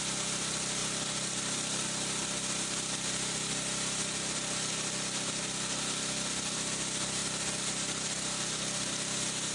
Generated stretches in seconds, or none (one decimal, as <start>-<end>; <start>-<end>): none